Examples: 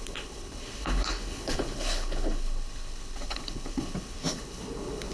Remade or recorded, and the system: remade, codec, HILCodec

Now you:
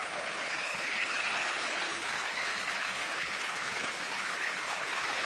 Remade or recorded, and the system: remade, codec, HILCodec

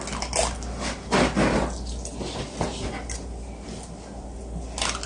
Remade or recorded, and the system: recorded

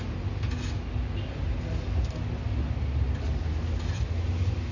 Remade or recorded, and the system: recorded